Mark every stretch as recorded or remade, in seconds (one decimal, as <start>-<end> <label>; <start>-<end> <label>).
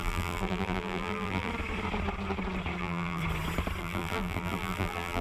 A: 0.0-1.5 remade; 1.5-2.8 recorded; 2.8-3.2 remade; 3.2-3.8 recorded; 3.8-5.2 remade